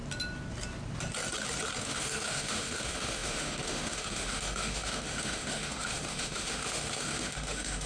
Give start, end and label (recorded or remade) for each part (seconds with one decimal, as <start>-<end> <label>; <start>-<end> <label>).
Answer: 0.0-1.8 recorded; 1.8-7.9 remade